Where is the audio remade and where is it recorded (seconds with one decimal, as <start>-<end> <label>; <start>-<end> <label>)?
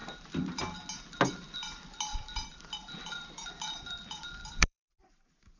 0.0-0.6 remade; 0.6-2.1 recorded; 2.1-5.1 remade; 5.1-5.6 recorded